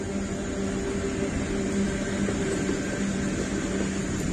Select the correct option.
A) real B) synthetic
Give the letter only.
A